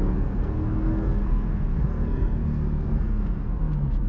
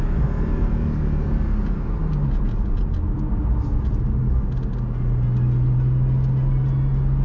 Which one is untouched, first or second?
second